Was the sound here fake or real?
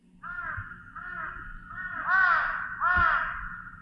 real